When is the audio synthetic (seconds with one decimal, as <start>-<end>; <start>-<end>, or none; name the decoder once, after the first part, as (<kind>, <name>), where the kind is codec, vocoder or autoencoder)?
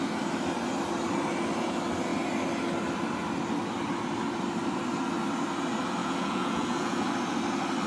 6.0-7.1 (vocoder, Vocos)